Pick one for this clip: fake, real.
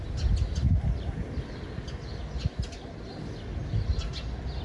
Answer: real